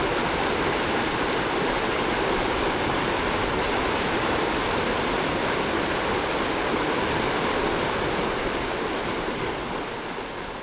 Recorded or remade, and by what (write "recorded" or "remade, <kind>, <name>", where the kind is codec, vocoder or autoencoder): recorded